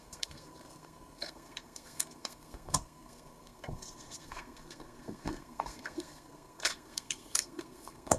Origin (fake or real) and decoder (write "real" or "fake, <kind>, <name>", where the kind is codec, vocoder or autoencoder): fake, codec, SNAC